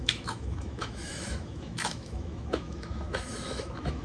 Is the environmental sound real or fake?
fake